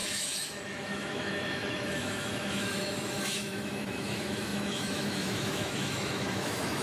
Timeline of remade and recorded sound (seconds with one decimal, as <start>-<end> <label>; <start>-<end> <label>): 0.0-6.8 remade